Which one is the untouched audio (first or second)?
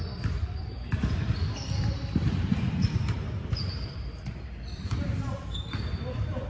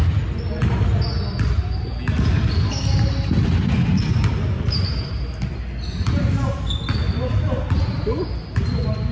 second